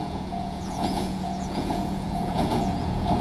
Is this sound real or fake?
fake